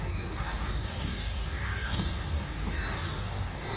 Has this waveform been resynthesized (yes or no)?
yes